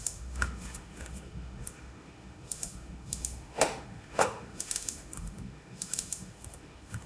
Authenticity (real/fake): fake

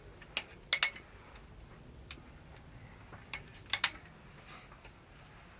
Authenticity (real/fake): real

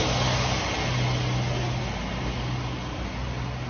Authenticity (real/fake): real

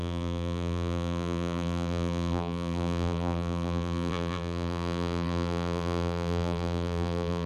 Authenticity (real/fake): fake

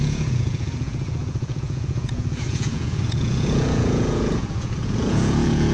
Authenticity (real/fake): fake